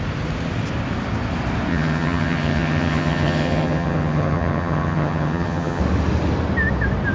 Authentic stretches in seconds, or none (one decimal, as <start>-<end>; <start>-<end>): 0.0-1.7; 5.8-7.1